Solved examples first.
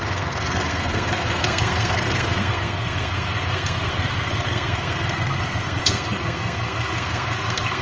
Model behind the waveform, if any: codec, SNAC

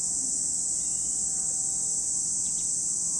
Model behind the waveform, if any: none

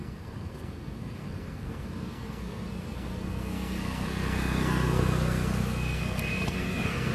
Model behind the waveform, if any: codec, SNAC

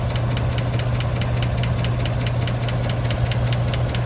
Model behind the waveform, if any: none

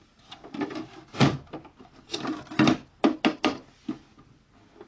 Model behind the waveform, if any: none